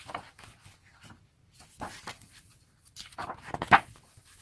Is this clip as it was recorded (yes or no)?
no